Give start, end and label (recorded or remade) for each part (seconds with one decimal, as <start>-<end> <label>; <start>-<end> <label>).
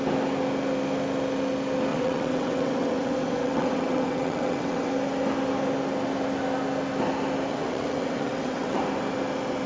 0.0-1.9 recorded; 1.9-4.9 remade; 4.9-7.5 recorded; 7.5-8.8 remade; 8.8-9.7 recorded